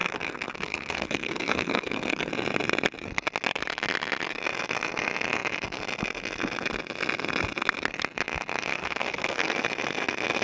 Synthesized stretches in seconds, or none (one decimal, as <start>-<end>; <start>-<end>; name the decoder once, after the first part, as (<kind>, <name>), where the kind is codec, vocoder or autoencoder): 0.0-2.3 (codec, SNAC); 8.7-9.6